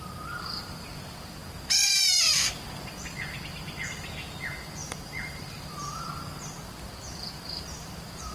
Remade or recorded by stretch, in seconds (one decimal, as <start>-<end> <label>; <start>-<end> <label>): 0.0-4.8 recorded; 4.8-6.1 remade; 6.1-8.3 recorded